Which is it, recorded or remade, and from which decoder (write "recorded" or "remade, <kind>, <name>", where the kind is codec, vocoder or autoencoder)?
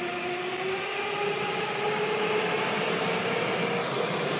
recorded